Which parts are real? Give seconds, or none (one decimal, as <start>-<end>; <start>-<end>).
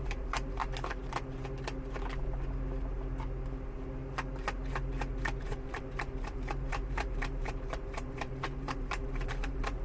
0.6-5.4